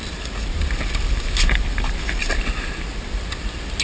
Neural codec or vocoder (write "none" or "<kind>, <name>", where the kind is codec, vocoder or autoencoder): none